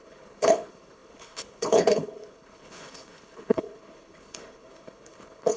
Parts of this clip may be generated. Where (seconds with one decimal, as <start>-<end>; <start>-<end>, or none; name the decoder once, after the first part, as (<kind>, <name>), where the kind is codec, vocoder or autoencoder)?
0.0-5.6 (codec, HILCodec)